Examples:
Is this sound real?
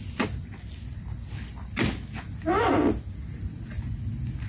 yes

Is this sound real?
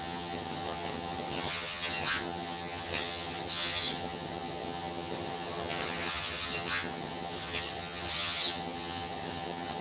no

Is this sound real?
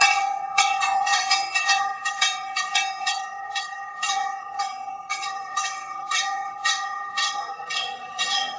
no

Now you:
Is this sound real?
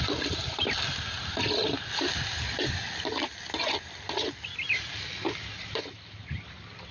yes